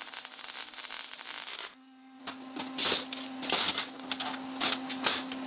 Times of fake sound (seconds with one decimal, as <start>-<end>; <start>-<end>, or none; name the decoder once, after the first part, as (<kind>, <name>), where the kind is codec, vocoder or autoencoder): 1.5-2.2 (codec, SNAC)